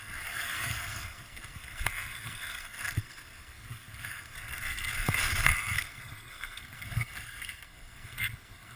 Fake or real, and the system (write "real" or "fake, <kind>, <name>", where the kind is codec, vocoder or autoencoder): fake, codec, SNAC